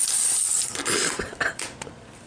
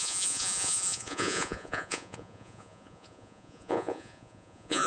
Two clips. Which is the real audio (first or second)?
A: first